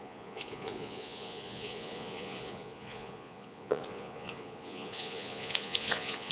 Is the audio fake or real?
fake